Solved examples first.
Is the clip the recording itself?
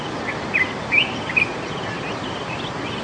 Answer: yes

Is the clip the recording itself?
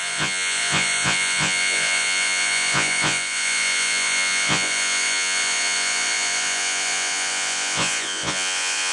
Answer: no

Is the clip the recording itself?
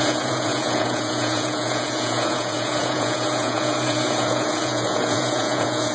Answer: no